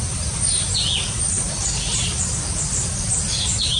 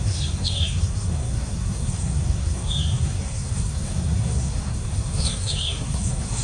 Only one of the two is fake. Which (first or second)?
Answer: second